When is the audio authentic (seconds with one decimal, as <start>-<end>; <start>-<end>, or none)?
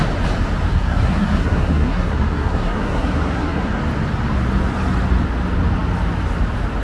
0.0-0.7; 3.8-6.8